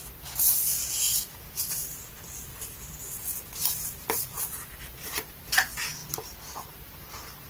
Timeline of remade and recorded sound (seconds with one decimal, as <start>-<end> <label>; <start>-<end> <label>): 0.0-0.7 recorded; 0.7-4.8 remade; 4.8-7.5 recorded